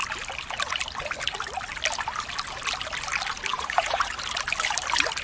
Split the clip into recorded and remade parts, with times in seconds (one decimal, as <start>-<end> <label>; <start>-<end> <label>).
0.0-3.5 recorded; 3.5-4.1 remade; 4.1-5.2 recorded